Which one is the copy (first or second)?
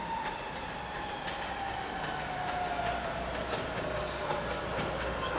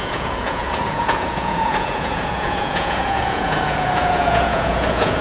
second